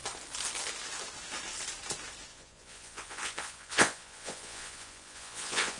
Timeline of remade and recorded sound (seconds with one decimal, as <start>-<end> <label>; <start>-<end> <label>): 0.0-2.3 recorded; 2.3-5.8 remade